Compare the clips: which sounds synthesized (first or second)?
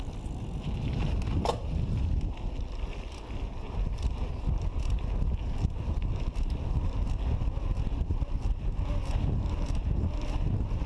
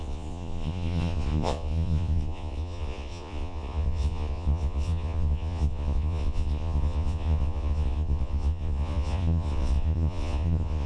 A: second